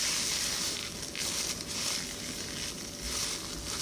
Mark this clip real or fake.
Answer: real